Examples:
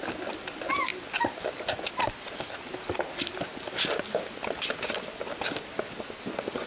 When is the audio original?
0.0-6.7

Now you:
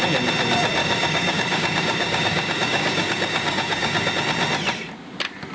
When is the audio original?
0.0-0.8; 4.1-5.5